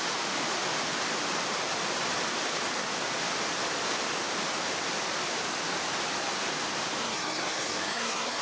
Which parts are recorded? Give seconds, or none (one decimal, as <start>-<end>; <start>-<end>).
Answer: 0.0-7.0

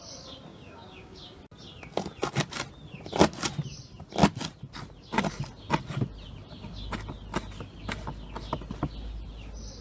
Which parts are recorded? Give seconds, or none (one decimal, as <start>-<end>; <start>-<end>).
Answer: 0.0-0.5; 1.4-9.8

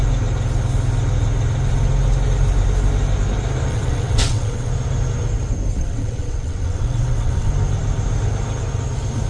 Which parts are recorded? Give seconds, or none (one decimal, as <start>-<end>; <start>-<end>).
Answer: 0.0-3.7; 4.7-5.7; 7.5-9.3